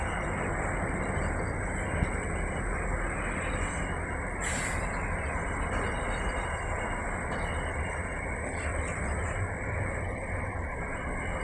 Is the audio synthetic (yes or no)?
no